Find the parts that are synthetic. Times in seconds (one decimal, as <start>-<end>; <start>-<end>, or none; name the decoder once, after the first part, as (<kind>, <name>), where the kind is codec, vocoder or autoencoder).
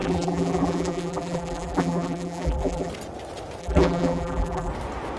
0.0-2.9 (vocoder, BigVGAN v2); 3.6-4.7